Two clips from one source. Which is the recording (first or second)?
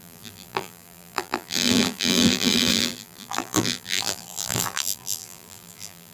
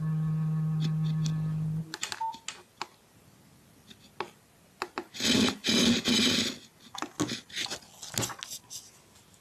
second